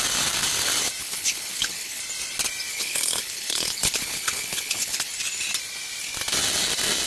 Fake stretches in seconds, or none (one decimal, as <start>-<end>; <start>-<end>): 1.0-2.0; 2.7-5.1